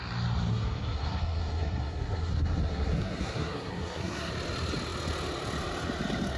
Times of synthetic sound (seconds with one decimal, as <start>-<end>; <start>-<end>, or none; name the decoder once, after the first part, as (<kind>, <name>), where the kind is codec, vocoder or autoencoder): 0.5-4.3 (codec, SNAC)